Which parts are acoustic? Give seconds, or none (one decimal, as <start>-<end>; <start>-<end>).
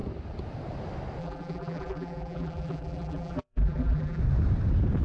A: 0.0-1.2; 4.2-5.0